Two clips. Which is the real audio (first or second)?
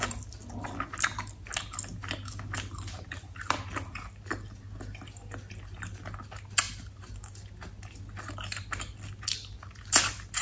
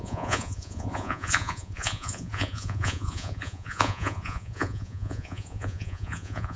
first